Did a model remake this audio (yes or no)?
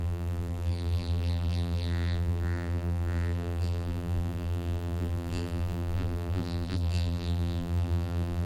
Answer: yes